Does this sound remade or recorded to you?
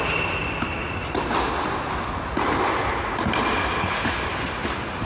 recorded